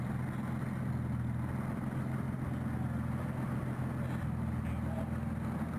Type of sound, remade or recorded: recorded